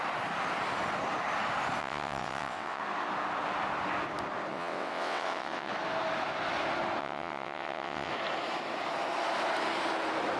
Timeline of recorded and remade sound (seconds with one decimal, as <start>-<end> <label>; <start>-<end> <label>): 0.0-1.8 recorded; 1.8-2.8 remade; 2.8-4.5 recorded; 4.5-5.7 remade; 5.7-7.0 recorded; 7.0-8.1 remade; 8.1-10.4 recorded